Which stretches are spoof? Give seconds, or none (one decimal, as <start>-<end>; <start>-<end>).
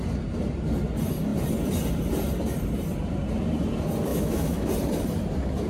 4.1-4.7